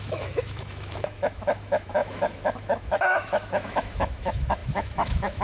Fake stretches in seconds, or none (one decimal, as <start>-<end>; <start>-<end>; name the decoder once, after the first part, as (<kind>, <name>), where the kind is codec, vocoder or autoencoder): 0.0-5.4 (autoencoder, DAC-VAE)